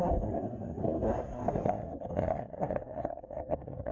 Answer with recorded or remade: remade